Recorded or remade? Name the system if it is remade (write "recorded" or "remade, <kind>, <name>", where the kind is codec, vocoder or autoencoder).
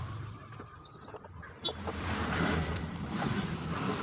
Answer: remade, vocoder, BigVGAN v2